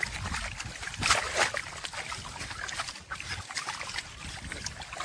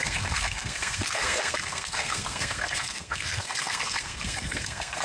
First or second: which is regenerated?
second